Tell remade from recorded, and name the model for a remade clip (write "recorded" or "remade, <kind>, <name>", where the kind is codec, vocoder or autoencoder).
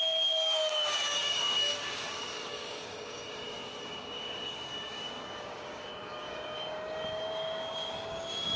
remade, codec, DAC